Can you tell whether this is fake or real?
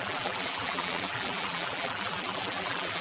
fake